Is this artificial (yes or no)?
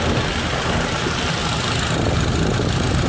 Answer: no